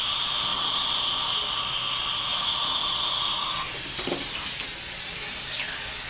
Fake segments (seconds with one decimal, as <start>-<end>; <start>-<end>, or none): none